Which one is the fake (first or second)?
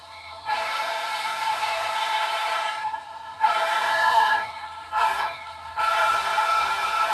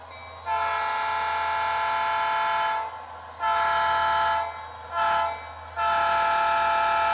first